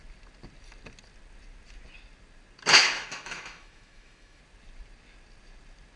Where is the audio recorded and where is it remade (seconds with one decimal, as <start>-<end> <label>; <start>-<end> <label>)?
0.0-2.8 recorded; 2.8-4.4 remade; 4.4-6.0 recorded